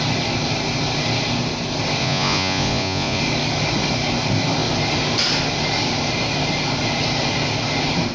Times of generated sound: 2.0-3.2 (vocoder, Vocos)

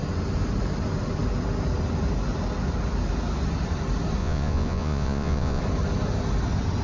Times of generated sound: 4.2-5.6 (vocoder, Vocos)

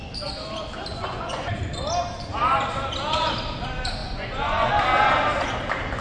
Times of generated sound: 0.9-1.6 (vocoder, Vocos); 4.0-4.7

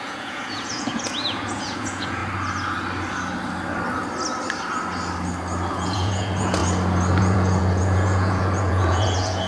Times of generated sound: 0.0-2.2 (vocoder, Vocos); 5.7-6.6; 7.2-9.5

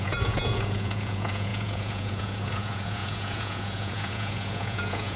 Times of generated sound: 0.0-5.2 (vocoder, Vocos)

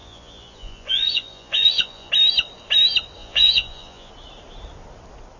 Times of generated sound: 0.0-2.1 (vocoder, Vocos); 3.2-4.1